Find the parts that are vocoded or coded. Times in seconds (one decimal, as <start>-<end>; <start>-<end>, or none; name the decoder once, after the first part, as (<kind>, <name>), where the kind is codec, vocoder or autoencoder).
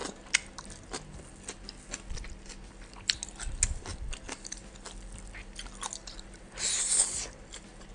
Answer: 3.9-4.6 (vocoder, BigVGAN v2)